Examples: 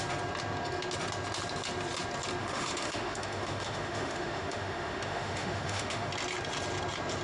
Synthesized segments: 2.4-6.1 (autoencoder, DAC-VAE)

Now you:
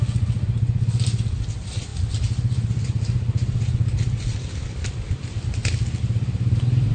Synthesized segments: none

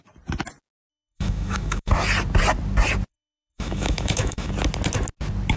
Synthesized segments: 0.9-1.9 (autoencoder, DAC-VAE); 3.1-4.5

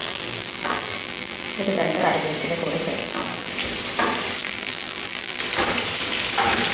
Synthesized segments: 0.0-2.0 (vocoder, BigVGAN v2); 3.0-3.5; 4.4-5.4